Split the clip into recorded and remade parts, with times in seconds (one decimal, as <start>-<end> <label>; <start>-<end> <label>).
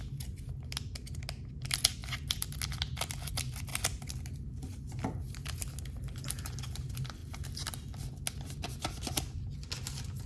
0.0-10.3 recorded